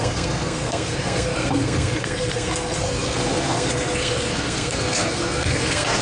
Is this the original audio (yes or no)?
no